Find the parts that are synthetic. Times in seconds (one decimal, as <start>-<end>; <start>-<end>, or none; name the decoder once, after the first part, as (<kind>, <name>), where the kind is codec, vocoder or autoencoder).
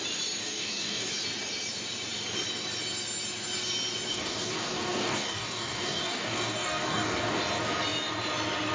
0.4-1.1 (codec, DAC); 4.1-7.4